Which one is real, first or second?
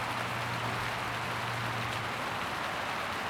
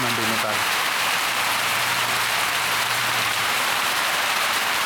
first